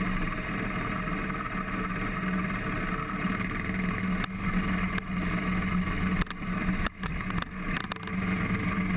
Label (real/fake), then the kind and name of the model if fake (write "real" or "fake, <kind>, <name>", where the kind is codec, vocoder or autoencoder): real